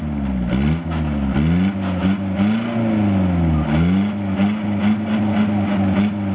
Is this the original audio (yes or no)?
yes